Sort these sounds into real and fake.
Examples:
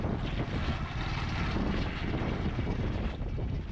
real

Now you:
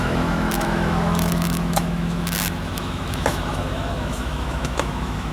fake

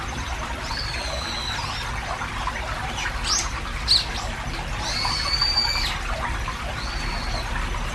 real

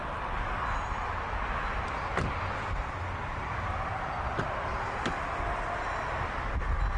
real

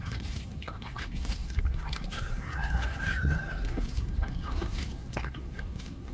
fake